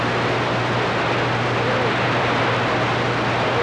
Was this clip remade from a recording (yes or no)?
no